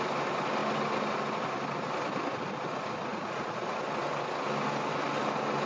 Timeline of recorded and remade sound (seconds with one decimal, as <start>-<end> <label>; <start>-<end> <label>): 0.0-3.1 recorded; 3.1-3.8 remade; 3.8-5.7 recorded